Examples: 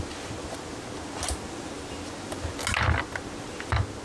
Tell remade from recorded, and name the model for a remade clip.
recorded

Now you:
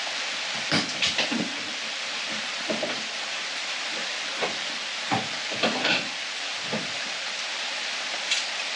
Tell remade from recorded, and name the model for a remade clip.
remade, vocoder, BigVGAN v2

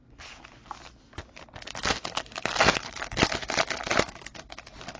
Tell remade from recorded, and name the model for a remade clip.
recorded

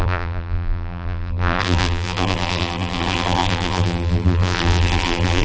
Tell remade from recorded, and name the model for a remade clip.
remade, vocoder, BigVGAN v2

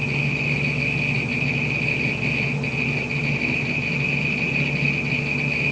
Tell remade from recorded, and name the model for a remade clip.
recorded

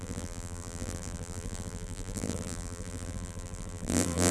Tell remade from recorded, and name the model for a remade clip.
remade, vocoder, BigVGAN v2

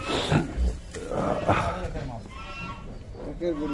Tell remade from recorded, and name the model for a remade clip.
recorded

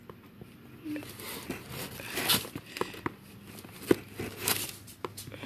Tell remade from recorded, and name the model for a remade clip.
recorded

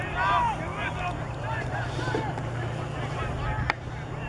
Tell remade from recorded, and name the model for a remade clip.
recorded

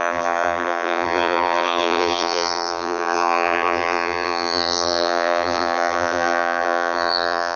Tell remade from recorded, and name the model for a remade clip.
remade, vocoder, BigVGAN v2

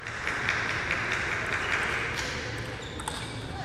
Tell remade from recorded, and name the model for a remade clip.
recorded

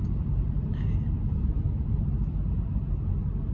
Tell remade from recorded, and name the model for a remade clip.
recorded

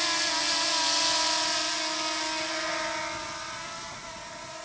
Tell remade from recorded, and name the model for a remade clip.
recorded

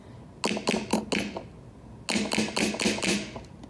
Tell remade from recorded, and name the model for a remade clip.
recorded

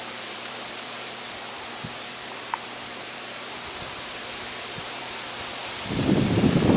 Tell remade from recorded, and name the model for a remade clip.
remade, vocoder, BigVGAN v2